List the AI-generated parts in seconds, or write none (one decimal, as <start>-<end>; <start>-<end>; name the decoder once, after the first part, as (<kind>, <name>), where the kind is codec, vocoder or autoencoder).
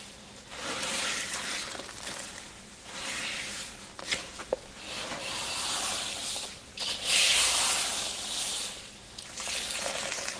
none